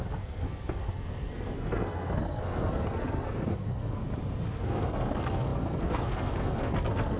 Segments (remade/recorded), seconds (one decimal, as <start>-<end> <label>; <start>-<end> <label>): 0.0-4.0 remade; 4.0-4.6 recorded; 4.6-7.2 remade